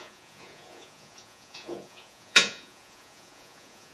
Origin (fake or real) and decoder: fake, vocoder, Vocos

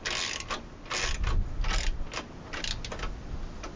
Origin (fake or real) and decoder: real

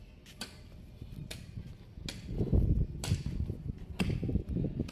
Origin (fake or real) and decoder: real